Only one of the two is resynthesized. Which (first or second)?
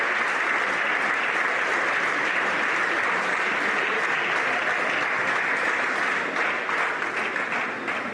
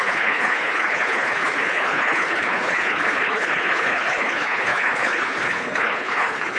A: second